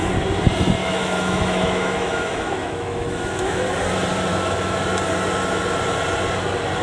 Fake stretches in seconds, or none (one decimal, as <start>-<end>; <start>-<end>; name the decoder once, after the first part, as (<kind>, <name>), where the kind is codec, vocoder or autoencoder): 0.8-3.6 (autoencoder, DAC-VAE); 4.3-4.8

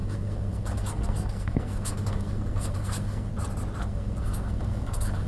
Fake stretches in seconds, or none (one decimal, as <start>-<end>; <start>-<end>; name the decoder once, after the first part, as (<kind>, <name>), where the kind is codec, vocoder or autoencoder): 0.0-3.3 (codec, SNAC); 3.8-5.3

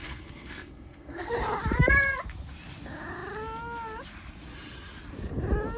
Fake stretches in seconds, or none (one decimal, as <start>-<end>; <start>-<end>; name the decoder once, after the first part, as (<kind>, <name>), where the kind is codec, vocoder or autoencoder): 0.0-1.3 (codec, SNAC)

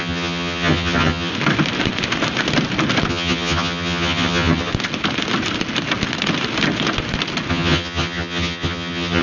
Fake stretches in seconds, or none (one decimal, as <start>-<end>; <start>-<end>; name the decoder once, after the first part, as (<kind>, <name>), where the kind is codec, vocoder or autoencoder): 0.0-1.3 (vocoder, HiFi-GAN); 3.1-4.7; 7.5-9.2

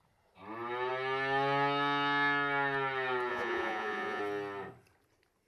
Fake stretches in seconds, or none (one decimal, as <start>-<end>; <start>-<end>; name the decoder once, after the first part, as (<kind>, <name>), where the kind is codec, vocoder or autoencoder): 3.3-4.2 (vocoder, Vocos)